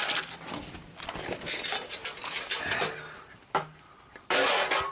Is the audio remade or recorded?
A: recorded